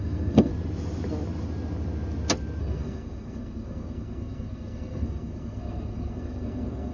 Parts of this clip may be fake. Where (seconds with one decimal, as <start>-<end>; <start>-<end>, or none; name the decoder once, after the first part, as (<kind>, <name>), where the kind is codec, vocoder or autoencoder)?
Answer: 0.0-0.5 (codec, SNAC); 2.6-6.9